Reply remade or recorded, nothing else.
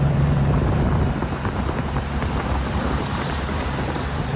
remade